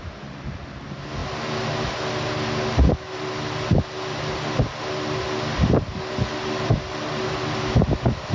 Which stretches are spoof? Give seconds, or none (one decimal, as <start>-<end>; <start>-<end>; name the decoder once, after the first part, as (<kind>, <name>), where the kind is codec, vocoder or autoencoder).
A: none